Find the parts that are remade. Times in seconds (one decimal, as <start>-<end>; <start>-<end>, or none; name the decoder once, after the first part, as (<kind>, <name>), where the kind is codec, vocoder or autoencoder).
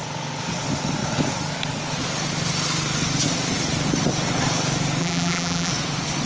5.0-5.7 (vocoder, BigVGAN v2)